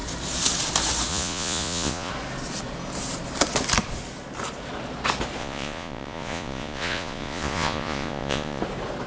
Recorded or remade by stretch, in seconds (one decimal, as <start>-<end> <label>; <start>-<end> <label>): 0.0-1.1 recorded; 1.1-2.1 remade; 2.1-5.4 recorded; 5.4-8.6 remade; 8.6-9.1 recorded